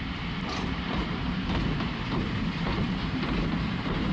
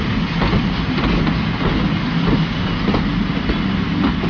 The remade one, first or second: first